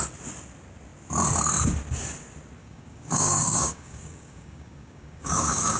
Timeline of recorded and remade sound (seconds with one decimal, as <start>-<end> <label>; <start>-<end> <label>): 0.0-2.6 recorded; 2.6-5.8 remade